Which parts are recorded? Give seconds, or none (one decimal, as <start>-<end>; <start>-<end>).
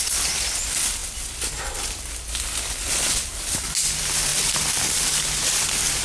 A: 0.0-4.3; 5.0-6.0